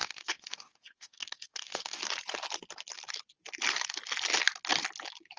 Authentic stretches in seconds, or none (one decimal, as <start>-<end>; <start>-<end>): 2.0-5.4